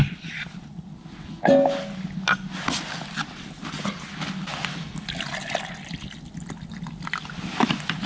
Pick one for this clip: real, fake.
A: real